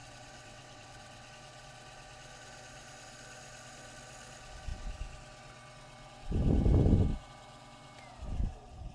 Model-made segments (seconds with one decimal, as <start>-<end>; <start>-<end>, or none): 0.0-1.3